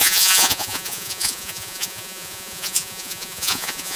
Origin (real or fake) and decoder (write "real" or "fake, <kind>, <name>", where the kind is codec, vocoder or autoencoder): fake, vocoder, Vocos